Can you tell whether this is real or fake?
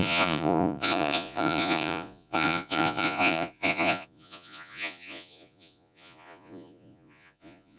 fake